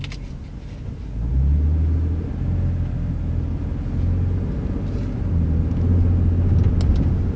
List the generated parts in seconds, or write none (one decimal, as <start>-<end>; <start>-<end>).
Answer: none